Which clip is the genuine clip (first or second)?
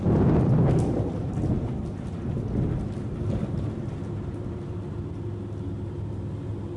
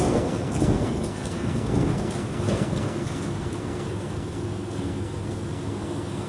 first